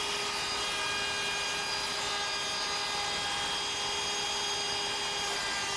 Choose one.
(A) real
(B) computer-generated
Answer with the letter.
A